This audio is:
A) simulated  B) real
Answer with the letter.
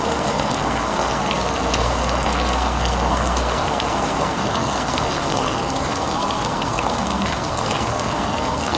A